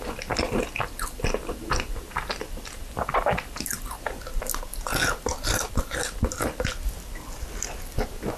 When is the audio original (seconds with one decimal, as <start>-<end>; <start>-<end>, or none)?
0.0-8.4